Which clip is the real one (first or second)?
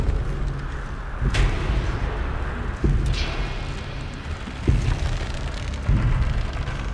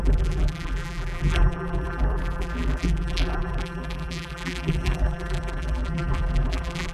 first